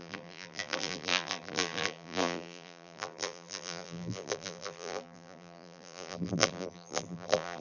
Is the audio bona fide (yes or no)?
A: no